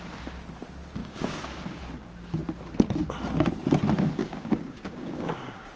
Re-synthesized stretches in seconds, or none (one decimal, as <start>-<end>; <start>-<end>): 1.0-1.8; 4.2-5.8